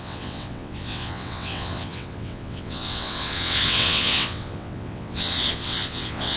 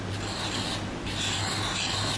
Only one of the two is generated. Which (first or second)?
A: first